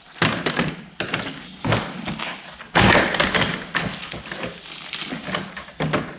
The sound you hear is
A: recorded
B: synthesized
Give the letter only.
A